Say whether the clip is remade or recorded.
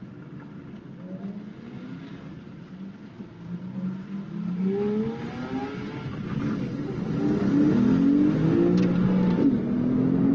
recorded